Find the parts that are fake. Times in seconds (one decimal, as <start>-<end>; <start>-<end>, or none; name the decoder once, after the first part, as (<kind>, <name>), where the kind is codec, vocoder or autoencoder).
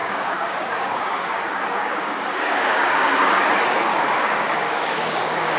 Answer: 0.0-3.4 (codec, DAC); 3.9-5.6